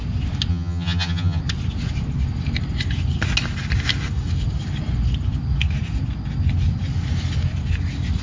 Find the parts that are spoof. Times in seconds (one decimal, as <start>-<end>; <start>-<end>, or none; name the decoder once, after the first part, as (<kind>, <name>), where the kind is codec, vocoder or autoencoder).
0.5-1.4 (vocoder, HiFi-GAN)